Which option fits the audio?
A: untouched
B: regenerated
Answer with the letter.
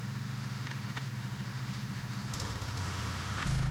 B